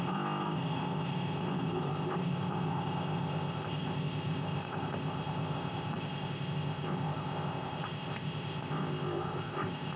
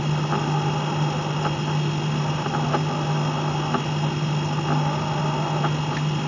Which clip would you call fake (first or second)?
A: first